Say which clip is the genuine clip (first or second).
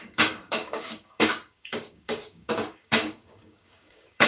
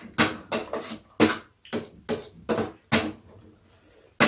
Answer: second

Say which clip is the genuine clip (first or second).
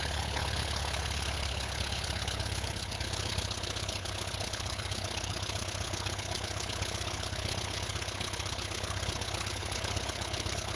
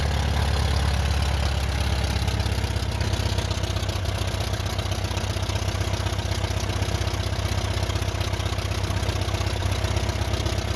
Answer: second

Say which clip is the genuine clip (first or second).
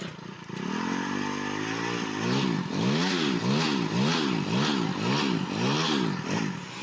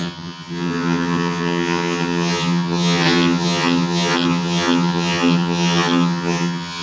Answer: first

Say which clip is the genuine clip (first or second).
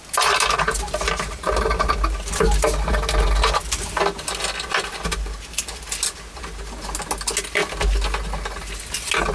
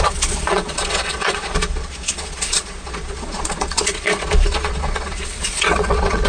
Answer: first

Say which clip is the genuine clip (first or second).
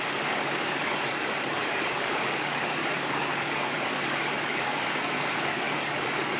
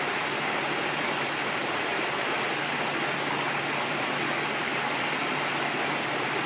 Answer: second